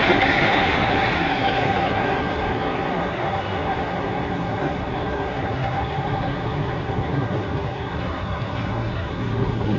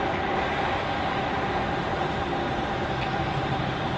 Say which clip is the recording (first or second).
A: second